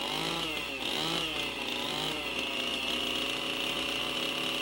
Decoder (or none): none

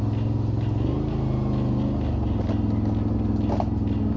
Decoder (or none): none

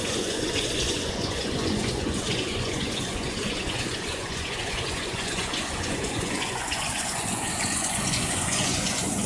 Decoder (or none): vocoder, Vocos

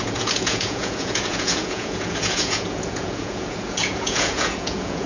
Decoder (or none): vocoder, Vocos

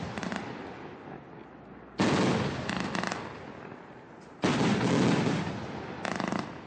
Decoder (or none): none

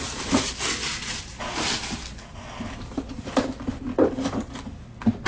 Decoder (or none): none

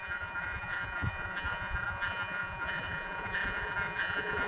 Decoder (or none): vocoder, Vocos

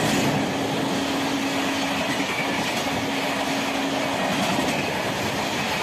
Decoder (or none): none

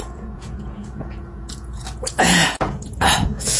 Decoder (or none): vocoder, Vocos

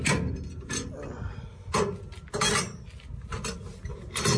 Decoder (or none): none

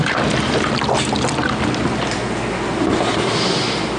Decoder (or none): none